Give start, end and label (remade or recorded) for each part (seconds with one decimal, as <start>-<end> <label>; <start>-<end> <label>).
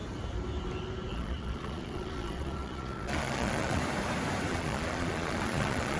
0.0-1.1 recorded; 1.1-3.8 remade; 3.8-4.5 recorded; 4.5-6.0 remade